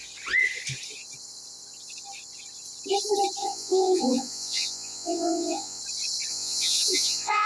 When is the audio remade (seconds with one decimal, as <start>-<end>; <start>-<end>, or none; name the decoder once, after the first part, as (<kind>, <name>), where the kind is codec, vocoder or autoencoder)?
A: 3.4-5.8 (vocoder, Vocos); 6.3-7.5